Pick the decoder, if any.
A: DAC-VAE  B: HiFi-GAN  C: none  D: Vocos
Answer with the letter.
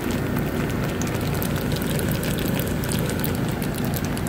C